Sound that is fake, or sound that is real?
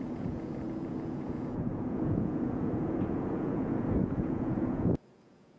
fake